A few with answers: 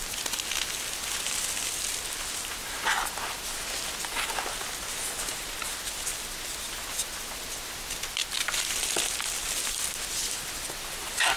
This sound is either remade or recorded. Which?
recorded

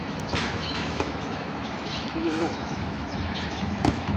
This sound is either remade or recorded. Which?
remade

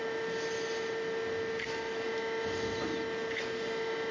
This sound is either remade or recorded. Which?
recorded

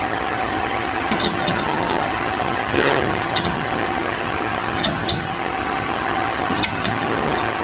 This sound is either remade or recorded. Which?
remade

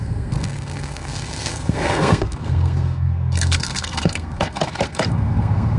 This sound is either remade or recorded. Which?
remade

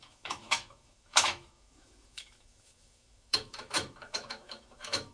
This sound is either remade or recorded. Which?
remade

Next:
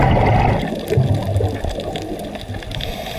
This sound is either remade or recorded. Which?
recorded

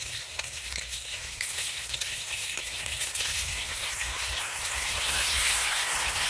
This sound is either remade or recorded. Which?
remade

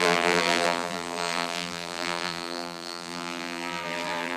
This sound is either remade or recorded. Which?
remade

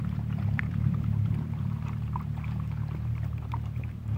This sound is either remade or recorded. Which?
remade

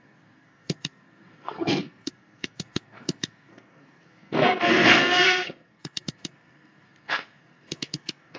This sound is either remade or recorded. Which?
remade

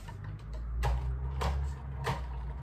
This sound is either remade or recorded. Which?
recorded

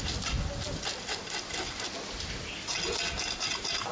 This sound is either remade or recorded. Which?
recorded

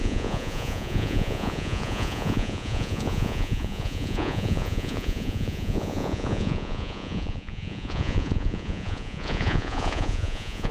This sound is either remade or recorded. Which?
remade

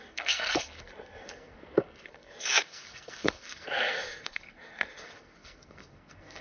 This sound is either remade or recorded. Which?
remade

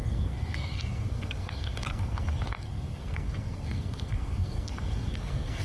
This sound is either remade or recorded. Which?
remade